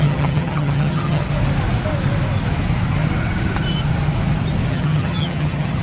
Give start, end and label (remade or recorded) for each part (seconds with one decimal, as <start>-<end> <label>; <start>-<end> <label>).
0.0-1.2 remade; 1.2-4.7 recorded; 4.7-5.8 remade